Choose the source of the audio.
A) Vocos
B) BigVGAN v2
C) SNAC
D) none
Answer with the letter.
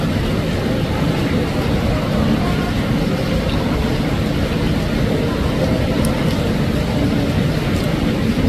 D